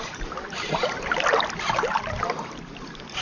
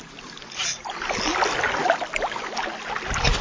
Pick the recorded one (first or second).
second